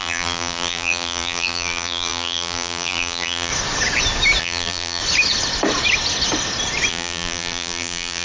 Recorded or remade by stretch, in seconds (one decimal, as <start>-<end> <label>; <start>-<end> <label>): 0.0-3.5 remade; 3.5-4.4 recorded; 4.4-5.0 remade; 5.0-6.9 recorded; 6.9-8.2 remade